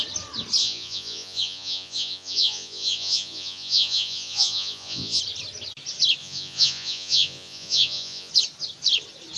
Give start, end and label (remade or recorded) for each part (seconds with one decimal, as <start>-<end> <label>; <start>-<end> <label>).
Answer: 0.0-0.6 recorded; 0.6-5.2 remade; 5.2-6.2 recorded; 6.2-8.3 remade; 8.3-9.4 recorded